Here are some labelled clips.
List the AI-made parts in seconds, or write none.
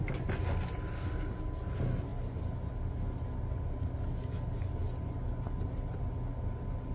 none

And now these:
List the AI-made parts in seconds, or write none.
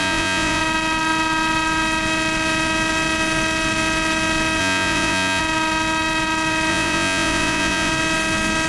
0.0-0.6 (vocoder, Vocos); 4.6-5.4; 6.7-7.9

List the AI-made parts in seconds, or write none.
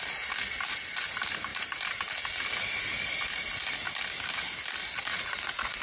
5.1-5.8 (vocoder, Vocos)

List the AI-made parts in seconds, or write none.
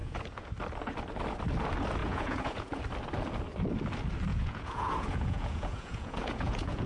0.0-0.5 (vocoder, Vocos); 2.0-2.8; 4.3-6.9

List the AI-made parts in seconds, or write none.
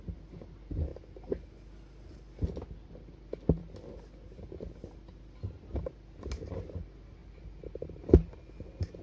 none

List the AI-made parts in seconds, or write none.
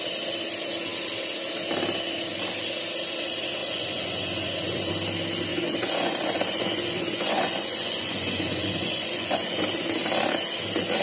3.6-4.9 (vocoder, Vocos); 5.5-9.6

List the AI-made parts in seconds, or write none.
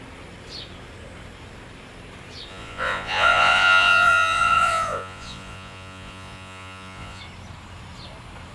2.5-7.2 (vocoder, Vocos)